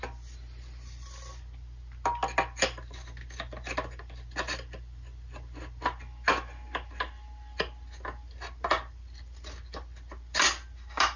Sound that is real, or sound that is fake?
real